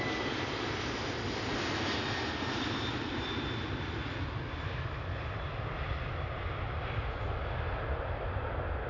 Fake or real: real